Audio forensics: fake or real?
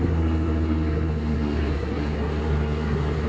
fake